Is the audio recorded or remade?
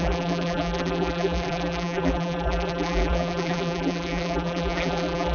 remade